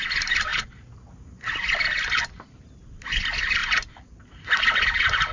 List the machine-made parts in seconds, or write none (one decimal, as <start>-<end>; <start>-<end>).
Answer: 0.5-1.4; 3.6-4.6